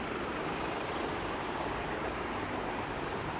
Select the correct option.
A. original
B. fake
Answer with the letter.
A